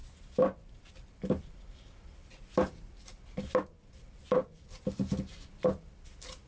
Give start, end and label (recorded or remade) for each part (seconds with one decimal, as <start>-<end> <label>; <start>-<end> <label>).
0.0-6.5 recorded